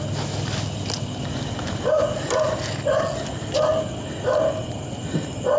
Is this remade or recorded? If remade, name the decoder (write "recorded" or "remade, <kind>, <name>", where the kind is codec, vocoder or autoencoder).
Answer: recorded